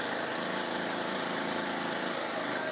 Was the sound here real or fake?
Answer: real